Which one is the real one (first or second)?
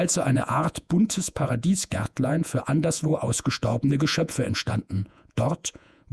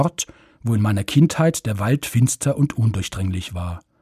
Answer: second